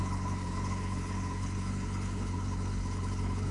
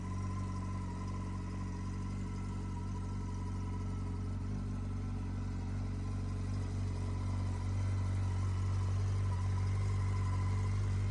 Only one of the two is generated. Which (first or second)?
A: first